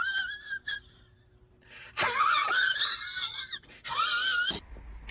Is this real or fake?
real